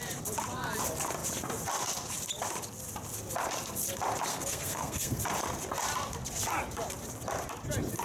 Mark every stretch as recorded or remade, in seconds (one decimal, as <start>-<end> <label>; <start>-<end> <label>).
0.0-4.3 recorded; 4.3-5.2 remade; 5.2-8.0 recorded